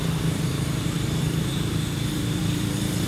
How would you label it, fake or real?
fake